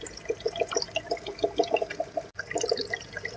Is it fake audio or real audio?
real